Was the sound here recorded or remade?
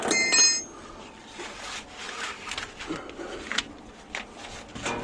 recorded